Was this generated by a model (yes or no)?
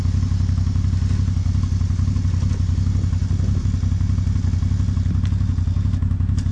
no